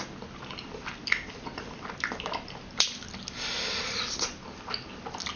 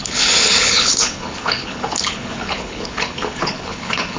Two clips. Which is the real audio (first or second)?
first